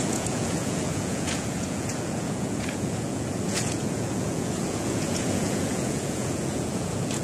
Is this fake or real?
fake